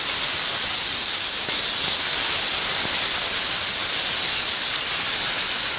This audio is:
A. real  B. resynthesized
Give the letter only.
A